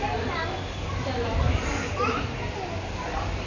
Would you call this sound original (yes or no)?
yes